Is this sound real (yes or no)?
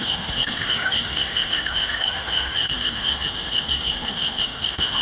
no